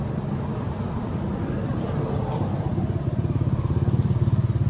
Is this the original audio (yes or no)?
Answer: yes